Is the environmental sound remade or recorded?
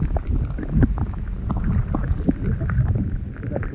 recorded